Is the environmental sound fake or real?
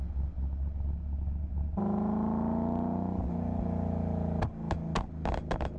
real